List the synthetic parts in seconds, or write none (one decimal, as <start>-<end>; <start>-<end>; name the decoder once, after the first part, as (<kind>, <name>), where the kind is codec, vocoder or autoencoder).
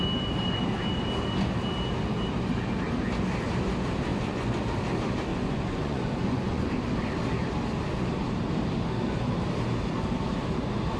4.1-4.6 (vocoder, Vocos); 5.3-6.7